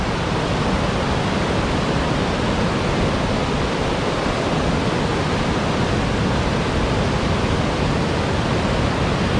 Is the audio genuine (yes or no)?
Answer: yes